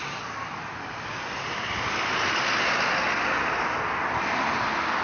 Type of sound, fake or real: real